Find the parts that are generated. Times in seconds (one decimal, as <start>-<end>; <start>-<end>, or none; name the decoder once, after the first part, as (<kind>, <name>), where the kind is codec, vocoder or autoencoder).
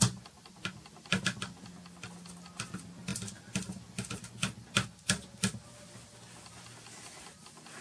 none